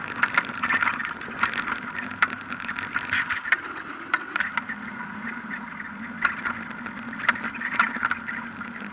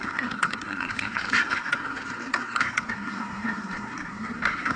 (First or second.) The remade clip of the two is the second